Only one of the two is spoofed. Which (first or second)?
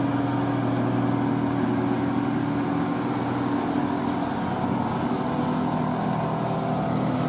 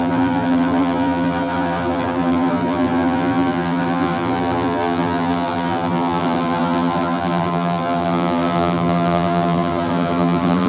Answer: second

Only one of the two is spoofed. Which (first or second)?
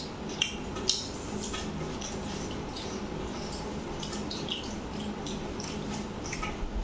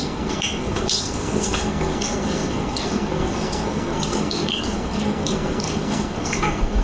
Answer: second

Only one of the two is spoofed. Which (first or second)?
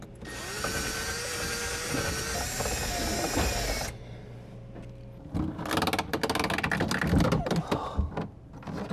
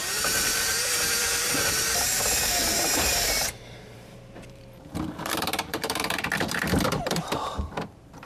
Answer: second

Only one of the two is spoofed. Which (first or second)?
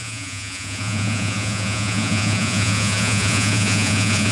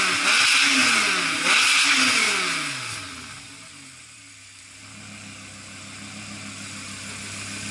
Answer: first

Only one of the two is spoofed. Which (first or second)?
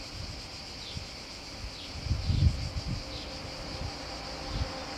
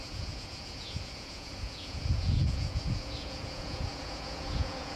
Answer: second